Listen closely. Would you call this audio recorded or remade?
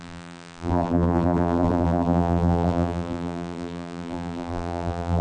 remade